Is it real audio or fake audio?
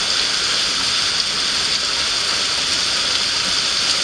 real